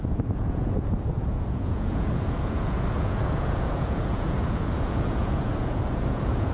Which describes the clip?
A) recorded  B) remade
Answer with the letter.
B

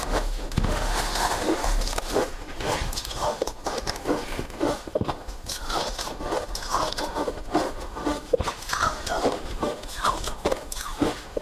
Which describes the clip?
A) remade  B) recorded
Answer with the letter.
A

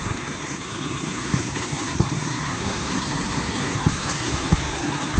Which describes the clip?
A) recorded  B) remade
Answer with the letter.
B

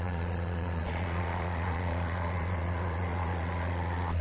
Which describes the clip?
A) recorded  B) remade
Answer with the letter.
B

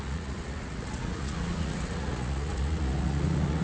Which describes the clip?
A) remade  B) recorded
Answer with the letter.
A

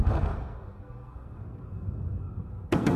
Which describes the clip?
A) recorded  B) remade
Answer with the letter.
B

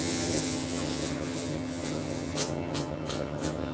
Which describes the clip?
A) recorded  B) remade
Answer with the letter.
B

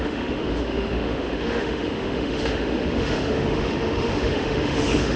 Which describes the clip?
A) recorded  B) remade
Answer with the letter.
B